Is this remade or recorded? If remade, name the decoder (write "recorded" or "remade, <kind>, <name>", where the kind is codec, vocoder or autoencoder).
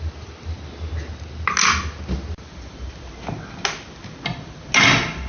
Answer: recorded